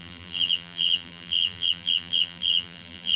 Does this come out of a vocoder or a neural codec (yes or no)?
yes